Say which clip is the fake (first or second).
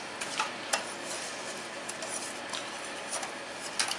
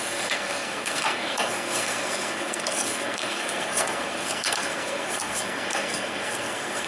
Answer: second